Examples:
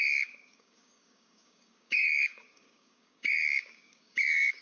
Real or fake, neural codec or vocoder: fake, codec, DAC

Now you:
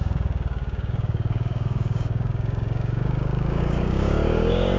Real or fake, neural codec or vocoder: fake, codec, DAC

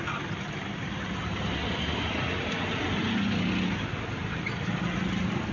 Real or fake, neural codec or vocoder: real